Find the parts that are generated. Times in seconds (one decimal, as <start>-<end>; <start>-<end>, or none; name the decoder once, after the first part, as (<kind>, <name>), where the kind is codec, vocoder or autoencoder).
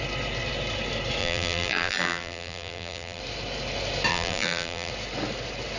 1.2-3.2 (vocoder, BigVGAN v2); 4.1-4.9